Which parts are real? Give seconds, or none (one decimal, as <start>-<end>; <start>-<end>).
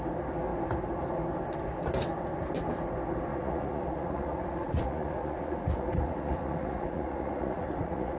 0.0-3.3